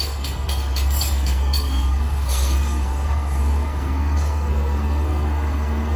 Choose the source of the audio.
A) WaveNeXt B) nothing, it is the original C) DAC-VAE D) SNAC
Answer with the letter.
D